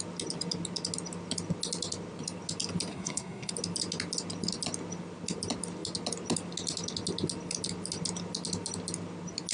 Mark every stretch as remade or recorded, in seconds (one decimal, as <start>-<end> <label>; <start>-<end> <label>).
0.0-2.9 recorded; 2.9-3.5 remade; 3.5-9.5 recorded